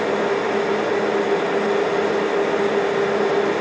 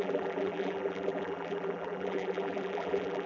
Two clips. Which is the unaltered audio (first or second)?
first